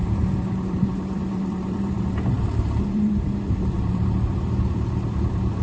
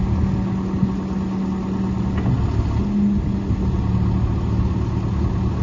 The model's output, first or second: first